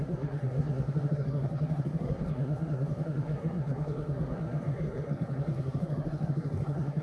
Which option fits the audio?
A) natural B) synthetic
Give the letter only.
B